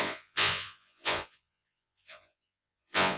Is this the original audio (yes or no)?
no